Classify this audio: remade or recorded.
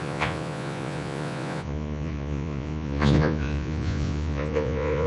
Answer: remade